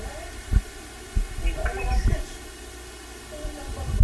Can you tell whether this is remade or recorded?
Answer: recorded